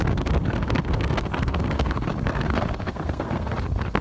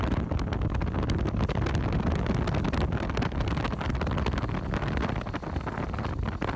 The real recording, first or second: second